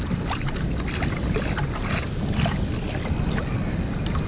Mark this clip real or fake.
real